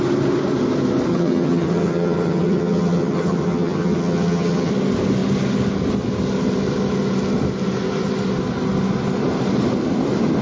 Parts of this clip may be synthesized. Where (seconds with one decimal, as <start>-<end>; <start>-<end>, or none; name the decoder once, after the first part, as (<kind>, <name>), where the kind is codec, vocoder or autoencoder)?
1.1-4.7 (vocoder, HiFi-GAN)